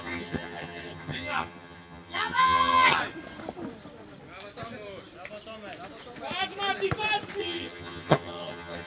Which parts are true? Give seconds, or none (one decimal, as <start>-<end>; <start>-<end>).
3.0-7.4